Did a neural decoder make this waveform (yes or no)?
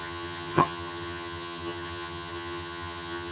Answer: yes